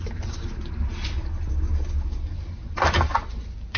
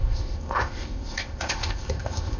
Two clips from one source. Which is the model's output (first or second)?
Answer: second